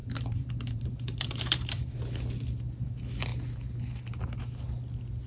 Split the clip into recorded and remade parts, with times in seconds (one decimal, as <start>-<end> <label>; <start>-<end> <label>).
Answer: 0.0-2.0 remade; 2.0-5.3 recorded